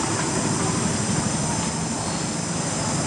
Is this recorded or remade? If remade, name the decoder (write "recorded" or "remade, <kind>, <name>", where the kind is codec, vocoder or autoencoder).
recorded